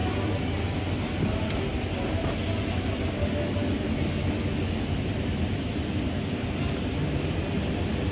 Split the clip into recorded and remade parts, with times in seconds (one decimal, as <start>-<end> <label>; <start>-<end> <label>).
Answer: 0.0-8.1 recorded